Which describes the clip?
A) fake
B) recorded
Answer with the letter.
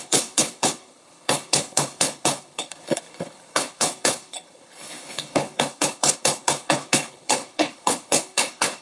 A